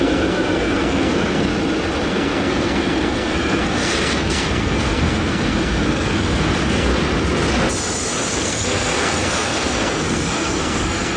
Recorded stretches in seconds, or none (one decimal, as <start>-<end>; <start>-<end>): 1.5-2.1; 6.9-8.3